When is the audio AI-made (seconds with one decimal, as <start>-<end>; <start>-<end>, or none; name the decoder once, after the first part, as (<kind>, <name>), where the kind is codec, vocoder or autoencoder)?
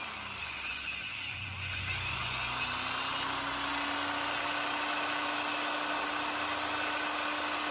0.4-2.6 (vocoder, Vocos)